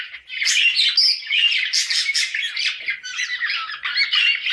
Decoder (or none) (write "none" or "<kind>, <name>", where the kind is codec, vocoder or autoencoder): none